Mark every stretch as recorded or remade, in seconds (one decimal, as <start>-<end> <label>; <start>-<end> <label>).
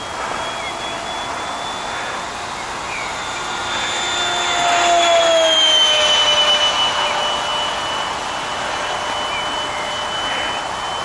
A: 0.0-11.0 recorded